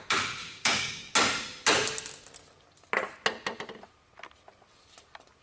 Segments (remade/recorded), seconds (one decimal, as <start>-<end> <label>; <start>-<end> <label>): 0.0-0.4 recorded; 0.4-1.1 remade; 1.1-5.4 recorded